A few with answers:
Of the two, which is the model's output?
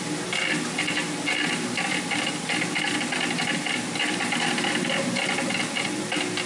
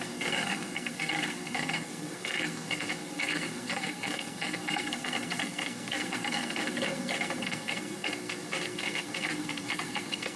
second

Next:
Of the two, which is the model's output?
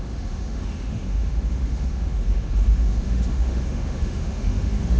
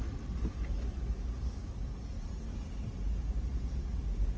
first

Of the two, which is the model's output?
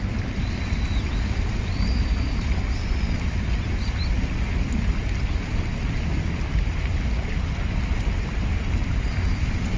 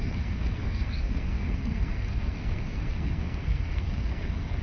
second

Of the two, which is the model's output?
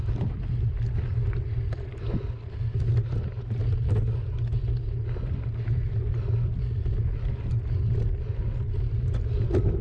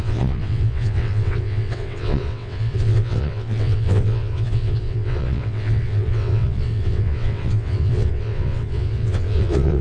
second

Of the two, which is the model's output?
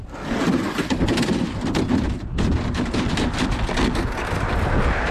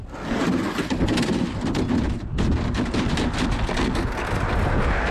first